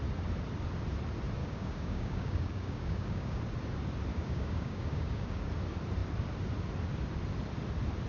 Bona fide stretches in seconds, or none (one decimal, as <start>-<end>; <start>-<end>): 0.0-1.4; 3.4-4.1; 5.5-8.1